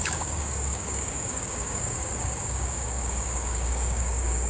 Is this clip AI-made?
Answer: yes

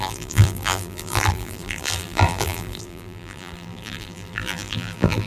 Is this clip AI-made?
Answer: yes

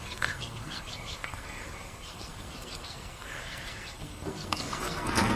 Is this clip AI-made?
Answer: yes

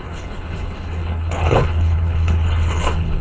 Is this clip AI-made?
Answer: yes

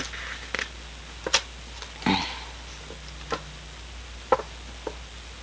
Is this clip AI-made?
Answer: no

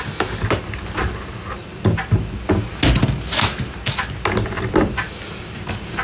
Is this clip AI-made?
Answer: no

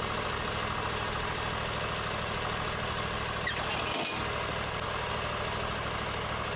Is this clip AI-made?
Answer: no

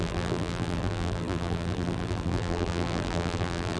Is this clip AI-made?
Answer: yes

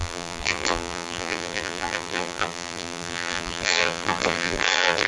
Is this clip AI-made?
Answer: yes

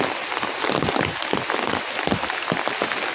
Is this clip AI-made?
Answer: no